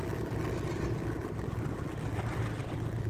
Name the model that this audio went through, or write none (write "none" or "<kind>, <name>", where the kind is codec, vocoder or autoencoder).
none